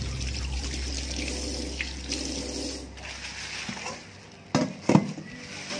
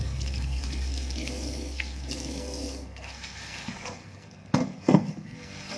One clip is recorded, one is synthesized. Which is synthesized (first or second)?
second